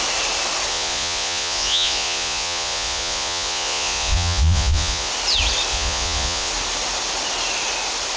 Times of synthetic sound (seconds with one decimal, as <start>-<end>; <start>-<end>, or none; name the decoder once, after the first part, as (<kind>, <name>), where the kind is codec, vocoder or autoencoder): 0.7-5.1 (vocoder, Vocos); 5.7-6.5